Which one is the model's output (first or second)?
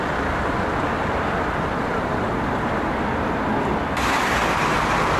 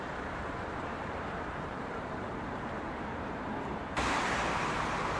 second